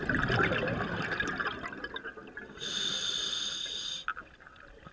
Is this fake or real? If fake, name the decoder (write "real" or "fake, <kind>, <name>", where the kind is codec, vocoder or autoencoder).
real